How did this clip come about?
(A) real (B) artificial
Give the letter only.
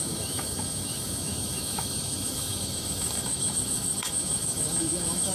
B